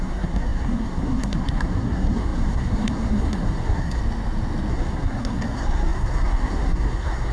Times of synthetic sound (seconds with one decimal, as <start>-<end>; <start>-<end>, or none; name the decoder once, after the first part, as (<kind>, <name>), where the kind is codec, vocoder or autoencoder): 0.0-4.0 (codec, SNAC); 4.7-7.3